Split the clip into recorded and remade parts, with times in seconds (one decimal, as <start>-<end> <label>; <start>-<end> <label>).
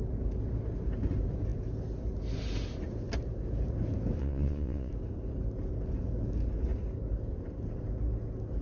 0.0-4.2 recorded; 4.2-4.9 remade; 4.9-8.6 recorded